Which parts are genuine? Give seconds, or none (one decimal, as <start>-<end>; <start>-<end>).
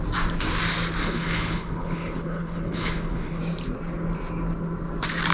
0.0-1.0; 3.4-5.3